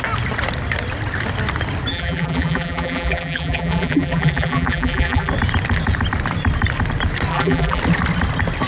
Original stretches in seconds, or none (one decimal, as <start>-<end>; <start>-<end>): 0.0-1.9; 5.3-7.3; 7.8-8.7